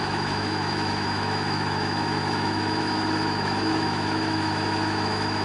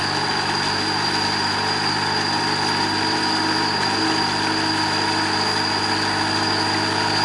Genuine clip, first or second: second